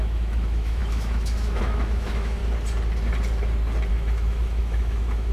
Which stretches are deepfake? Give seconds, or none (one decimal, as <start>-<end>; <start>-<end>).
0.0-2.4; 3.9-5.3